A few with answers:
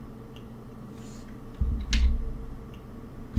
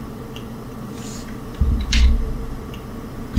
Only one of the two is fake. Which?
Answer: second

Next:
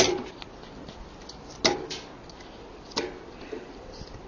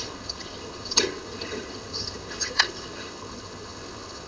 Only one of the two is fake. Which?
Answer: second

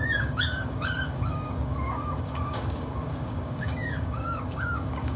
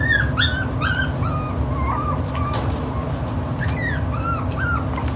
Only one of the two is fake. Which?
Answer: first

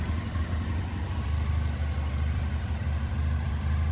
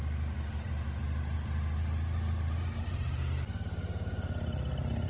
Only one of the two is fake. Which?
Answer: first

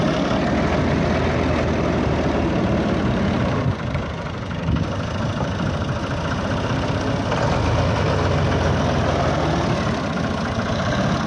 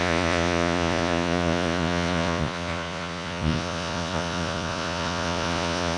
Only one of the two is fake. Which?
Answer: second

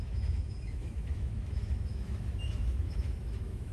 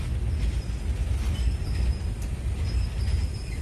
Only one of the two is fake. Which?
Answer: first